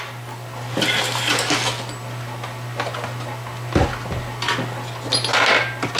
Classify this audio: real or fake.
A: real